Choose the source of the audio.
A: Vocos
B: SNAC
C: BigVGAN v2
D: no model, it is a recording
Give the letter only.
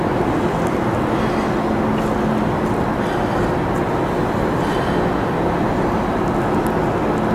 D